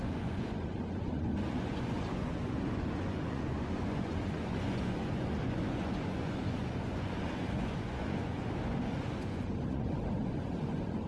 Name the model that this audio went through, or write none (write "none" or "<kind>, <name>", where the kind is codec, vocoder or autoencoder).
vocoder, Vocos